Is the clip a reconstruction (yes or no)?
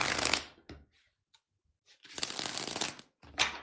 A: no